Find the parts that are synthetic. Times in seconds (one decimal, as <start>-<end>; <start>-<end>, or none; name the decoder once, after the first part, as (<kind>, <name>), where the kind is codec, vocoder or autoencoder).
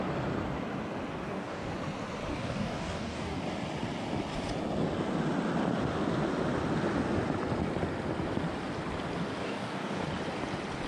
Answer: 1.1-1.7 (codec, DAC); 2.3-3.4; 9.4-10.0